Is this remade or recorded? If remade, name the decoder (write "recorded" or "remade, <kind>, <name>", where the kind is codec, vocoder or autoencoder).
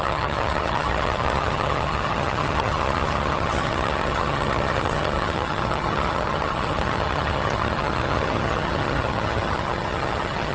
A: remade, vocoder, HiFi-GAN